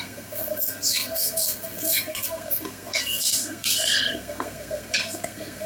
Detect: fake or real fake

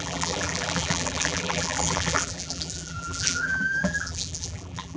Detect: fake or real fake